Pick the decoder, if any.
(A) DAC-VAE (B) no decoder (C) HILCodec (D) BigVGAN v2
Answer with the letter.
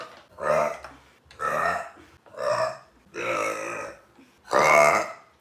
B